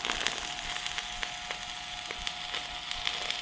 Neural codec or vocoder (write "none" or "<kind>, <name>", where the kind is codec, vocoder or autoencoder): none